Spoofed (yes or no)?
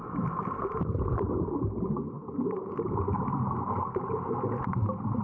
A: no